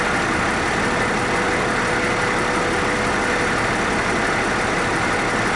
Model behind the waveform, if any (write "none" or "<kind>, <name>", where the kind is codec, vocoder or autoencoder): none